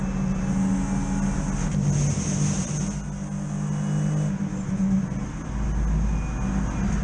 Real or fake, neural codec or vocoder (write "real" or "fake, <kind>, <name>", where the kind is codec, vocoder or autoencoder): real